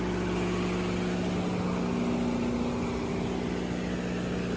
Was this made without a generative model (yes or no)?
yes